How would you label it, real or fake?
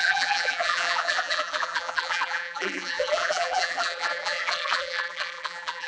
fake